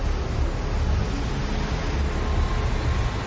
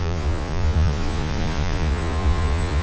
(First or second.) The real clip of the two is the first